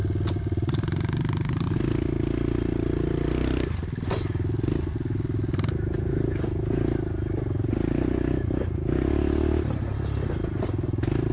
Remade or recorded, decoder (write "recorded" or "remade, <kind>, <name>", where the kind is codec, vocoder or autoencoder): recorded